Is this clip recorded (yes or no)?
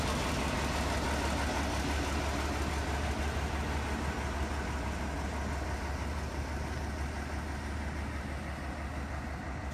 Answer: yes